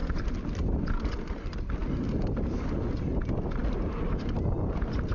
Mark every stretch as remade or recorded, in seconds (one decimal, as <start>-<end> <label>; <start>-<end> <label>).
0.0-5.1 recorded